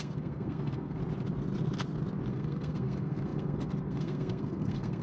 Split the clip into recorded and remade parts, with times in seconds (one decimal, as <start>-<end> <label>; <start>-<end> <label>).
0.0-1.0 remade; 1.0-2.3 recorded; 2.3-5.0 remade